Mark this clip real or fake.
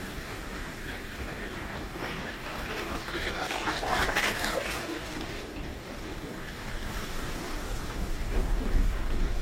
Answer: fake